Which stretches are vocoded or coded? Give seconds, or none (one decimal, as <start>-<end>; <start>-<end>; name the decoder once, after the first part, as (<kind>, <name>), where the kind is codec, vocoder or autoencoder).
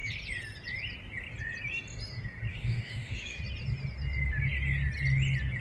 2.5-3.4 (autoencoder, DAC-VAE)